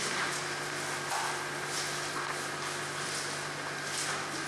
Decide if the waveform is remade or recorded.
recorded